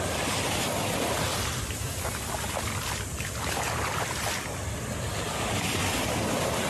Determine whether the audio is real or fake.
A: real